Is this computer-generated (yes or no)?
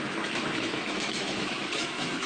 yes